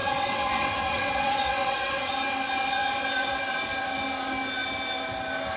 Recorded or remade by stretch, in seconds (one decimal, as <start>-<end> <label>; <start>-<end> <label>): 0.0-2.1 remade; 2.1-5.6 recorded